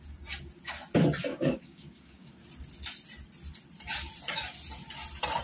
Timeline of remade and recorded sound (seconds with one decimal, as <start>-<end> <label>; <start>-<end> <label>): 0.0-1.3 recorded; 1.3-2.3 remade; 2.3-5.4 recorded